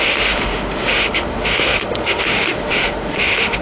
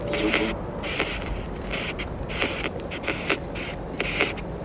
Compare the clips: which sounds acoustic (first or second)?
second